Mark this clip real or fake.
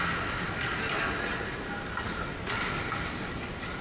real